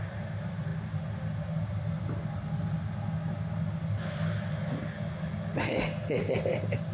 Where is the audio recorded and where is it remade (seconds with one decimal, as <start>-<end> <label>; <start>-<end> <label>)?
0.0-6.9 recorded